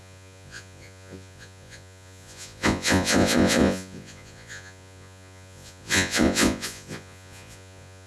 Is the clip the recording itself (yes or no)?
no